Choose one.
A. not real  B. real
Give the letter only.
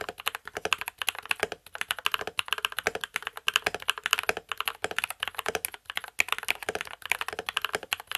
B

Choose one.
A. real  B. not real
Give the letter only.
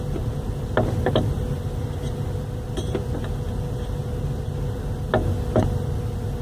A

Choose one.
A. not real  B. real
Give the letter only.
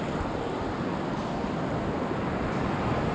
B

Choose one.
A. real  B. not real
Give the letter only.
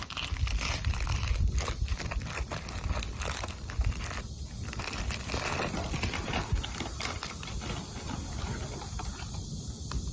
A